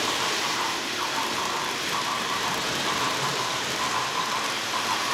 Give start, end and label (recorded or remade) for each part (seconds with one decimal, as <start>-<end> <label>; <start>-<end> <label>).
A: 0.0-3.3 remade; 3.3-3.9 recorded; 3.9-5.1 remade